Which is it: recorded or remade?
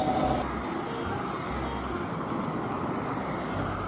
recorded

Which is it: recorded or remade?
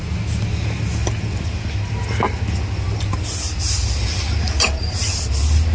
recorded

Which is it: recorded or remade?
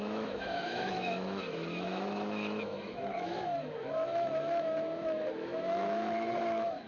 remade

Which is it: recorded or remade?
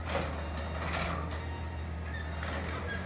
recorded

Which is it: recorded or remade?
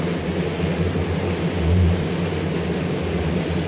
recorded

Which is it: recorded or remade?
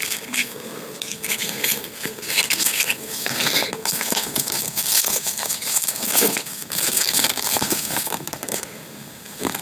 remade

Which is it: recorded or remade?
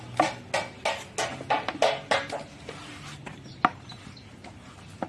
recorded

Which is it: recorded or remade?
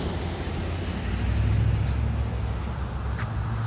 recorded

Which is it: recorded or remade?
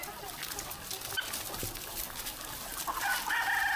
recorded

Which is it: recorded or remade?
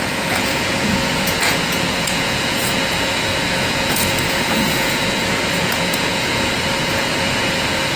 remade